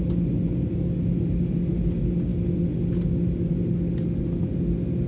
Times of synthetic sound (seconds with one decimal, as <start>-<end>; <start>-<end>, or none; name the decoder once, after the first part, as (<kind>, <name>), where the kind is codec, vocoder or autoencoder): none